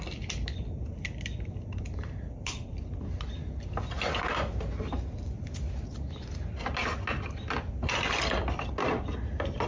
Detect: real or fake real